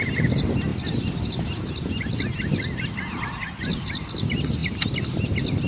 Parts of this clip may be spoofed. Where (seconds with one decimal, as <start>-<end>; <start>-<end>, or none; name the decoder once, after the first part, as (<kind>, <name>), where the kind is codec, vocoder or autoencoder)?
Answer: none